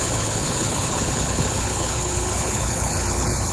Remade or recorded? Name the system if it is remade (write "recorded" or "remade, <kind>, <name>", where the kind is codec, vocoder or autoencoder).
remade, codec, HILCodec